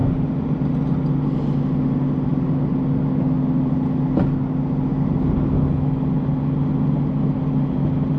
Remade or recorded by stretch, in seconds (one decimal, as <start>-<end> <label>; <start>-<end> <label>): 0.0-8.2 recorded